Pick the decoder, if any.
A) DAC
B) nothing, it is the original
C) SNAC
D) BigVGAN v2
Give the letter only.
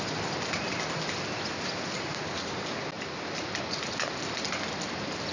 B